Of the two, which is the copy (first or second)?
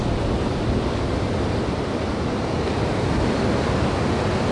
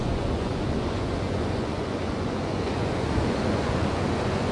second